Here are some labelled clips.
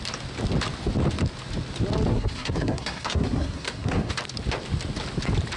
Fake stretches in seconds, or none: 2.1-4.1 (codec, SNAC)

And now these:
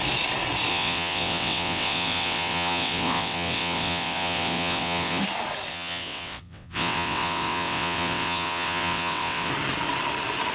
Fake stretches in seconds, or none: 0.7-5.2 (vocoder, WaveNeXt); 5.7-9.5

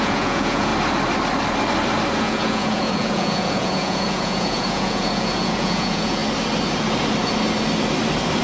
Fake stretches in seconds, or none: 0.0-0.7 (vocoder, Vocos); 2.2-6.2

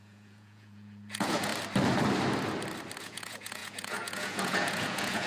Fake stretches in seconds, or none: 0.0-1.5 (vocoder, Vocos); 3.0-5.3

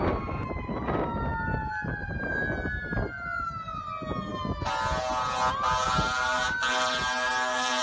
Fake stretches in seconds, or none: none

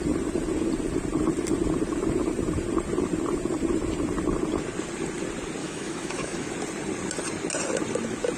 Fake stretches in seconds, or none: 5.6-6.5 (autoencoder, DAC-VAE)

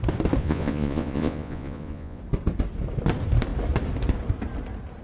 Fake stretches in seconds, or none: 0.4-2.2 (vocoder, Vocos)

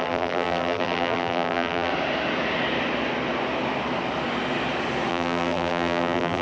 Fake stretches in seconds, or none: 0.0-1.9 (vocoder, BigVGAN v2); 5.1-6.4